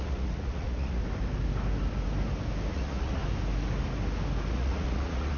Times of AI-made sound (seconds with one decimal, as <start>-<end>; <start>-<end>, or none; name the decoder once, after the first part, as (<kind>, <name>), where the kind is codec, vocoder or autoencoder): 0.0-1.0 (vocoder, Vocos); 2.7-3.2; 4.5-5.4